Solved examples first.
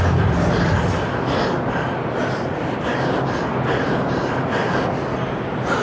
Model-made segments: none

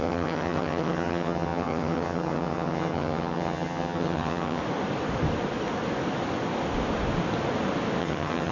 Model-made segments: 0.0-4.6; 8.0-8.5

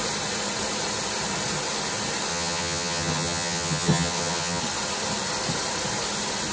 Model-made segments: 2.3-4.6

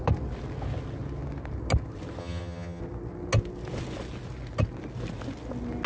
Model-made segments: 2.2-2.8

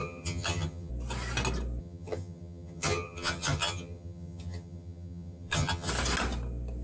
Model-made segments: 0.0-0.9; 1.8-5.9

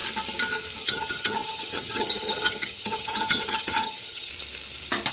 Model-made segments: 0.8-4.3

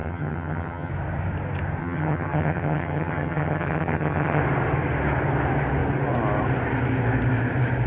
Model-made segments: 0.0-0.9; 1.8-4.4

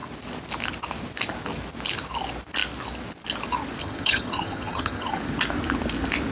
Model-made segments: 3.8-5.2